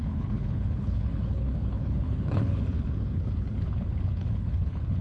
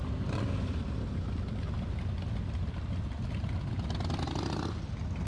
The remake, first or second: first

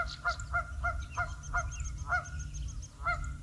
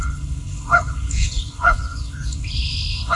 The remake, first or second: second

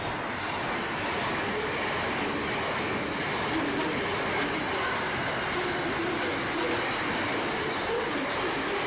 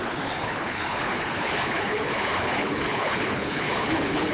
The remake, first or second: second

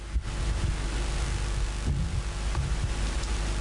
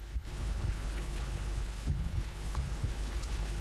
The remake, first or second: second